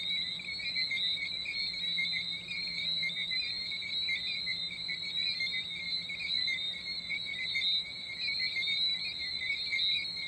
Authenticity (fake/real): real